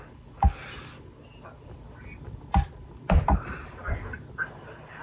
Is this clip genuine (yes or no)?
yes